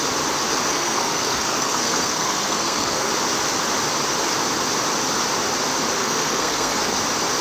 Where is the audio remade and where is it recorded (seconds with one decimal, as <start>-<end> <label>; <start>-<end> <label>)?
0.0-0.7 recorded; 0.7-3.1 remade; 3.1-6.0 recorded; 6.0-7.0 remade; 7.0-7.4 recorded